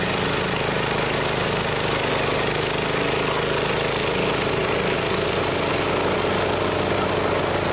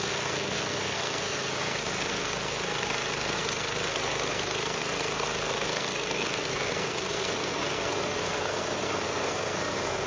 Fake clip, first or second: second